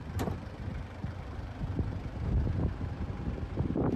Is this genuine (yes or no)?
no